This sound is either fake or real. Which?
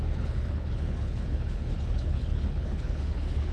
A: fake